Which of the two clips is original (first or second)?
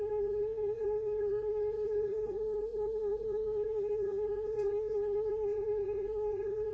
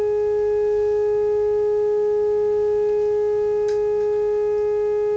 second